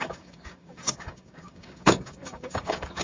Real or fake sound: fake